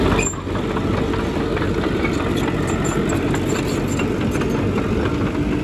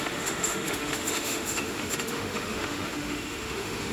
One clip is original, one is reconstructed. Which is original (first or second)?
first